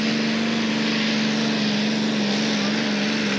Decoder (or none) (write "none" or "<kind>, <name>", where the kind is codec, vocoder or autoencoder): none